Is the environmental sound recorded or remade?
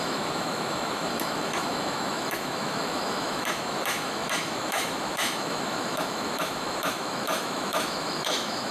remade